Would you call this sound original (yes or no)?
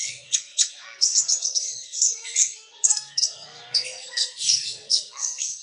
no